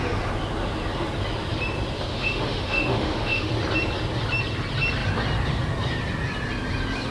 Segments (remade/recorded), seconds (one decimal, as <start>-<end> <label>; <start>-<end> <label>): 0.0-2.1 recorded; 2.1-3.5 remade; 3.5-7.1 recorded